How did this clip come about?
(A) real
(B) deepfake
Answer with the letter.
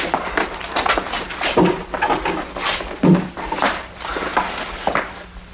A